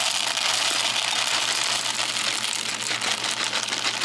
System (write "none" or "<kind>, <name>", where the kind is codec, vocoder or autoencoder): none